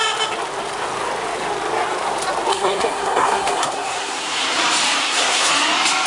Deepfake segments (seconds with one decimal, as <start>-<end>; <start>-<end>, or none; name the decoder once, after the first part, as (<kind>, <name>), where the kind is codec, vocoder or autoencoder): 2.5-4.6 (codec, SNAC); 5.0-5.5